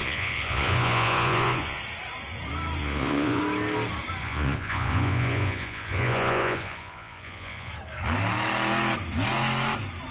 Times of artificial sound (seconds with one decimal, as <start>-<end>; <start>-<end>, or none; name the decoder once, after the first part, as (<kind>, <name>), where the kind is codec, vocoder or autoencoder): 0.0-1.8 (vocoder, Vocos); 2.8-3.4; 4.2-7.7